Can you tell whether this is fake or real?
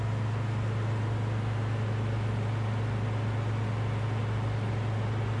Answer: real